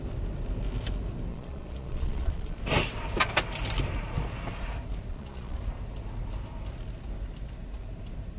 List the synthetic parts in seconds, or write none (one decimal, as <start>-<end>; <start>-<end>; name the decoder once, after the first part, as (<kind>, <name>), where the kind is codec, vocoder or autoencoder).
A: 1.3-2.6 (vocoder, Vocos); 5.1-5.6